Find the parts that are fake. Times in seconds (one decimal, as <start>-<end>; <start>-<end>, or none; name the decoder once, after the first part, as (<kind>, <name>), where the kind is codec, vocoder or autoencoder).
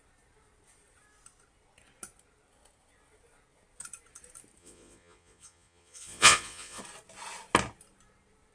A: 4.6-6.8 (vocoder, Vocos)